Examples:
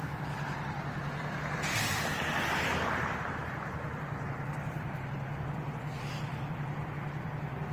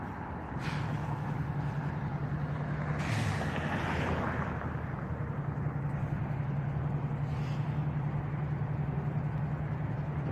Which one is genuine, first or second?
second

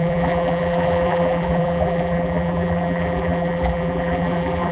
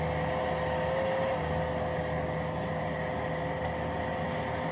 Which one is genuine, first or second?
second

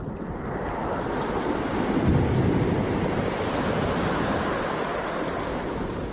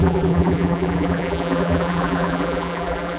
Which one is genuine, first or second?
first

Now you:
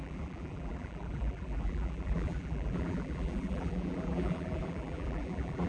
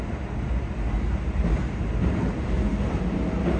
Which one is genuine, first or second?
second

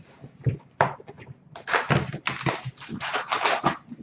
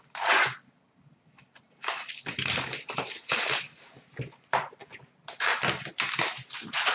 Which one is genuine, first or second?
second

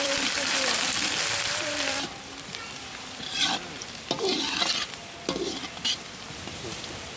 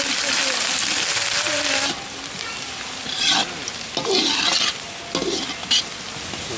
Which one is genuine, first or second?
second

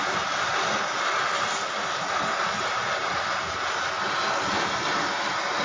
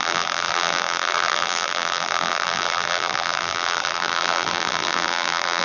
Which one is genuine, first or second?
first